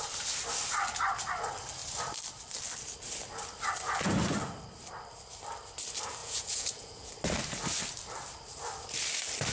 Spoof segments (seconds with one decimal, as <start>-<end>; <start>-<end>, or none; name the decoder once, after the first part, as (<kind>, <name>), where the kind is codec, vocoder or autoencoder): 6.2-7.1 (vocoder, Vocos)